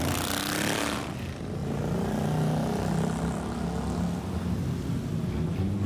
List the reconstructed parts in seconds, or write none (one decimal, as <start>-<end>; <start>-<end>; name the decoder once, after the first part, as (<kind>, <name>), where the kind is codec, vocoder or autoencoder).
none